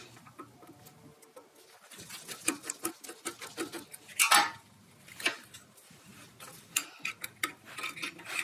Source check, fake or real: real